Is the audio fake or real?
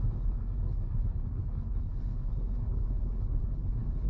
fake